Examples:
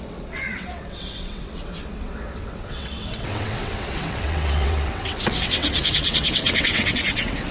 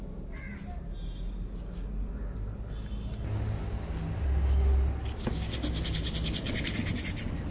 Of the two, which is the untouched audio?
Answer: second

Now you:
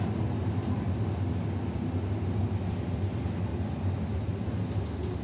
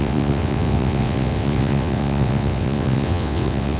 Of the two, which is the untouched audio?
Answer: first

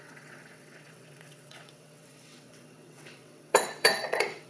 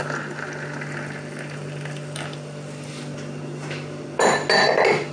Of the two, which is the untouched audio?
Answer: second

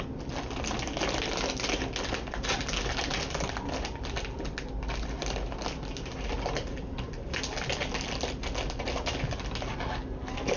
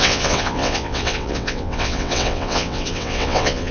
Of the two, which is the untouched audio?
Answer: first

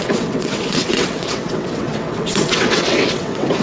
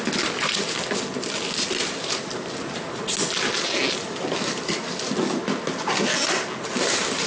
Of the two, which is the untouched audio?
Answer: second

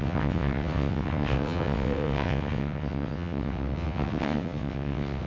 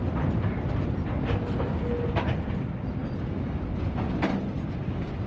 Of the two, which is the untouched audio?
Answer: second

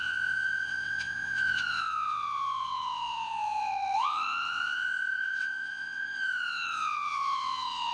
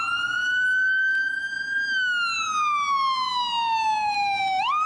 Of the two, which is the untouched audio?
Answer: second